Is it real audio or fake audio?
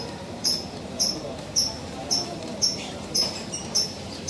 fake